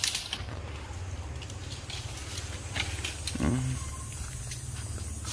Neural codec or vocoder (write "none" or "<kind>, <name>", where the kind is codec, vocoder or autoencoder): none